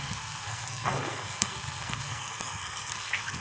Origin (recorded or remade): remade